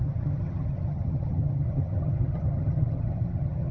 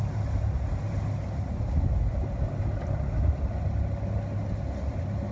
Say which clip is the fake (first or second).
first